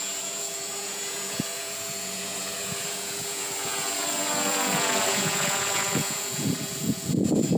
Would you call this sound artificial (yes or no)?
yes